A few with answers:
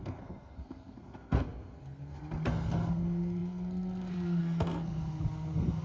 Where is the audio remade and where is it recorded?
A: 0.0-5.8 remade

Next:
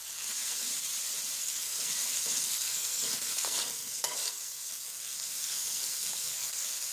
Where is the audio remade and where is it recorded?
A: 0.0-0.7 remade; 0.7-1.4 recorded; 1.4-6.9 remade